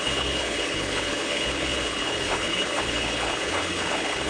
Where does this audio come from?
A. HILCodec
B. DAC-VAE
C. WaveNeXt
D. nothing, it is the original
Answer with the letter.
A